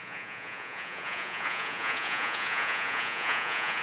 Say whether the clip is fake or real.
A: fake